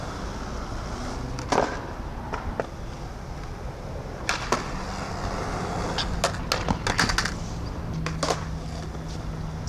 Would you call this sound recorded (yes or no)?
yes